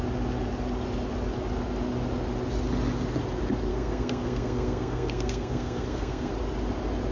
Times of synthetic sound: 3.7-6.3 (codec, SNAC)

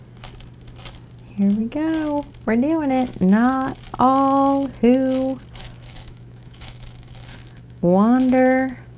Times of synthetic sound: 3.1-3.8 (autoencoder, DAC-VAE); 5.6-9.0

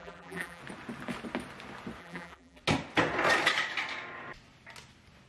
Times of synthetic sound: 0.0-0.6 (vocoder, BigVGAN v2); 2.0-2.6

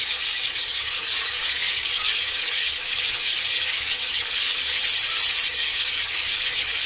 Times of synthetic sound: 0.0-4.8 (codec, DAC); 5.5-6.9

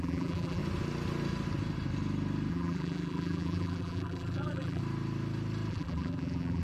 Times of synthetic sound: 0.0-0.6 (vocoder, BigVGAN v2); 2.5-4.8; 5.7-6.6

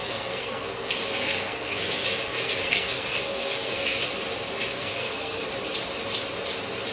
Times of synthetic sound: 0.0-4.1 (codec, SNAC); 4.7-5.5

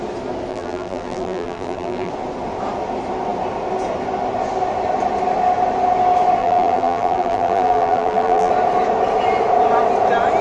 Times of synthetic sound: 0.5-2.1 (vocoder, BigVGAN v2); 6.4-8.5

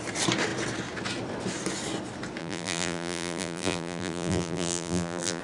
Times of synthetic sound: 2.4-5.4 (vocoder, BigVGAN v2)